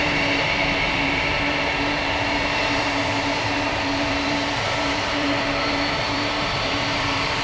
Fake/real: fake